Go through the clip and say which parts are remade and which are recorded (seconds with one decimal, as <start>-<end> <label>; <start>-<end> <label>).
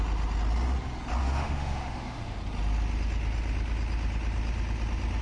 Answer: 0.0-1.2 recorded; 1.2-2.4 remade; 2.4-5.2 recorded